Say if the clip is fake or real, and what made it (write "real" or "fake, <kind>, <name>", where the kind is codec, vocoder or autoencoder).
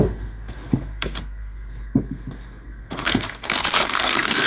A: fake, codec, SNAC